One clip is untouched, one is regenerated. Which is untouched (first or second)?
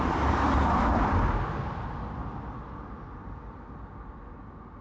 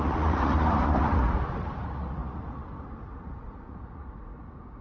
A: first